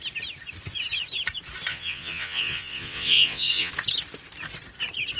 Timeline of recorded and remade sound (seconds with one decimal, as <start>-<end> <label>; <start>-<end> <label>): 0.0-1.7 recorded; 1.7-3.7 remade; 3.7-5.2 recorded